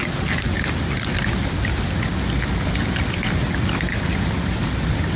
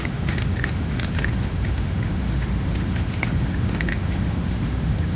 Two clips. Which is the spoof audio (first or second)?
second